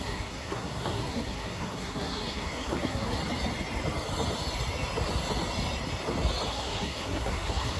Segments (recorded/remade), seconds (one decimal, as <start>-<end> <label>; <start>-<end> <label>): 0.0-3.2 remade; 3.2-6.5 recorded; 6.5-7.8 remade